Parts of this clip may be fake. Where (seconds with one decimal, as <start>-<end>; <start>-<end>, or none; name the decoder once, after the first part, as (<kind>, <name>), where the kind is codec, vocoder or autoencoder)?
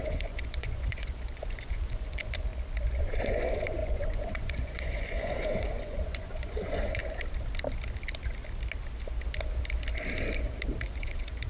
0.0-2.5 (vocoder, Vocos); 3.0-7.0; 10.9-11.5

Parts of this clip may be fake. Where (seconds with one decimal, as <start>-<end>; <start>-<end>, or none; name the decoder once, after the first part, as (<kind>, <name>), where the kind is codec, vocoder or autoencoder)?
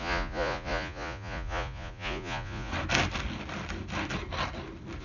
0.0-2.7 (vocoder, Vocos)